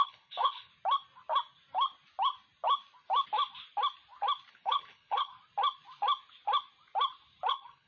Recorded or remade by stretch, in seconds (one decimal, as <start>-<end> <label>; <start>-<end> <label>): 0.0-0.7 remade; 0.7-4.5 recorded; 4.5-5.3 remade; 5.3-7.5 recorded; 7.5-7.9 remade